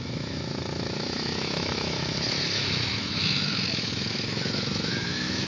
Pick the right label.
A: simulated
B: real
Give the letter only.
A